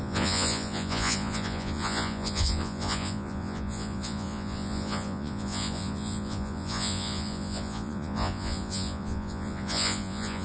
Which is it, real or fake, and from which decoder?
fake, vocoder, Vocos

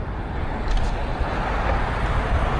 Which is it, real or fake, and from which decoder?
real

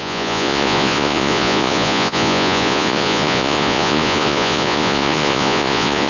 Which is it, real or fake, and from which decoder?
fake, vocoder, Vocos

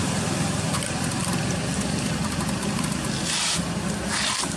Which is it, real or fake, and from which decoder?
real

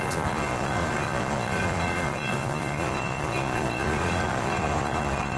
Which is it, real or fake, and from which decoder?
fake, vocoder, Vocos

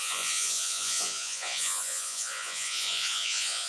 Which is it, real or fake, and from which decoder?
fake, vocoder, Vocos